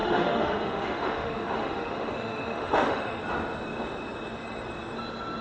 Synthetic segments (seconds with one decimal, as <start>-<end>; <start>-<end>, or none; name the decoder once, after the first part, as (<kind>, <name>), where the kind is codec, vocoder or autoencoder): 0.0-3.2 (autoencoder, DAC-VAE)

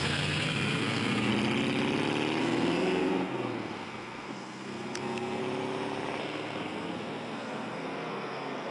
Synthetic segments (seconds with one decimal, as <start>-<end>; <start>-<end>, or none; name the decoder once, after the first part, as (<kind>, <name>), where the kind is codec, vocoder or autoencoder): 0.0-1.3 (codec, SNAC); 2.4-5.4; 6.2-8.7

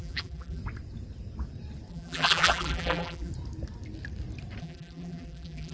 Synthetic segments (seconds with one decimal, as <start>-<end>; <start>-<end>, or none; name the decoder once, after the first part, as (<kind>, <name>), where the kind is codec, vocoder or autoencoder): 0.0-0.6 (vocoder, BigVGAN v2); 1.9-3.3; 4.6-5.7

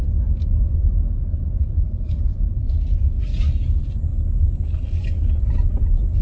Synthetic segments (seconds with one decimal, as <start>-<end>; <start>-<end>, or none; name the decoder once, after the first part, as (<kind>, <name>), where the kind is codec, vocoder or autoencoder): 1.3-3.1 (vocoder, BigVGAN v2)

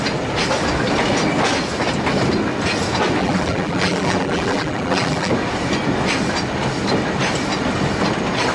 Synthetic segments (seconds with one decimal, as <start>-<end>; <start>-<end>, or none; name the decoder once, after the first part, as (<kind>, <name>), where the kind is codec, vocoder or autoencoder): 3.2-5.3 (vocoder, BigVGAN v2)

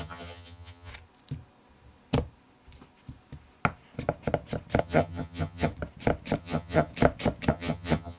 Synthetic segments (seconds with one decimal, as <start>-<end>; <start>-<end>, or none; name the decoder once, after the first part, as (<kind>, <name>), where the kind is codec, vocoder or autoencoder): 0.0-0.9 (vocoder, HiFi-GAN); 4.8-5.7; 6.4-6.9; 7.5-8.2